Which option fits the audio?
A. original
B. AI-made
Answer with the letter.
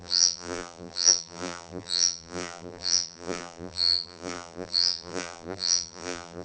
B